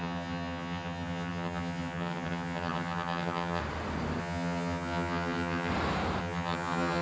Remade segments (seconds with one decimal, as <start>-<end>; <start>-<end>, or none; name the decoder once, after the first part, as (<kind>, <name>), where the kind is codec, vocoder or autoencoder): 0.0-3.6 (vocoder, HiFi-GAN); 4.2-5.7; 6.2-7.0